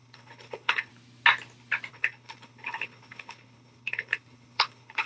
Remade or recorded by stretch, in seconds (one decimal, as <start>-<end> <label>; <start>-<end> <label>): 0.0-0.9 remade; 0.9-1.9 recorded; 1.9-5.1 remade